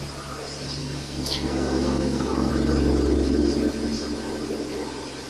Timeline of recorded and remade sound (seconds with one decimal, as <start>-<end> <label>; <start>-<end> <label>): 0.0-0.8 recorded; 0.8-2.5 remade; 2.5-5.3 recorded